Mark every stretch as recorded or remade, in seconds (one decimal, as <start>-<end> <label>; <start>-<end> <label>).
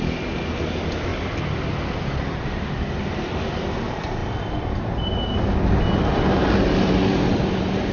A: 0.0-7.9 recorded